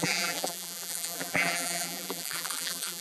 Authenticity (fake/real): fake